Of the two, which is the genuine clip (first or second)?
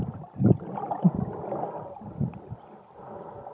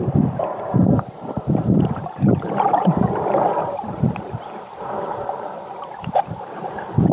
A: first